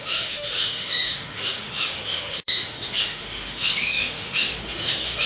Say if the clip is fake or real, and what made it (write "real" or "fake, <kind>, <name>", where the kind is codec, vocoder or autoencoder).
fake, autoencoder, DAC-VAE